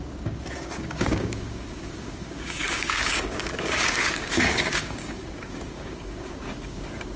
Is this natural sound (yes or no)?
no